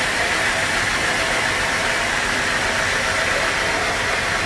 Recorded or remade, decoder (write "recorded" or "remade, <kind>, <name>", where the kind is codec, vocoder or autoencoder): recorded